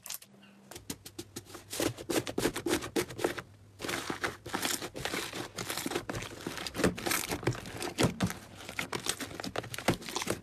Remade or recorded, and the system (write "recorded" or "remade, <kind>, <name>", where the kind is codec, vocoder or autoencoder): recorded